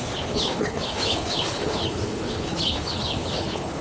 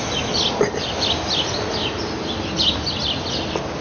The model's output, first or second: first